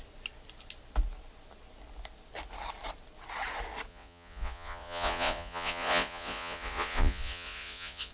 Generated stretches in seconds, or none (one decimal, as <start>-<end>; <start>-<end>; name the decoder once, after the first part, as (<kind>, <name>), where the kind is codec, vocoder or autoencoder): 3.9-8.1 (vocoder, Vocos)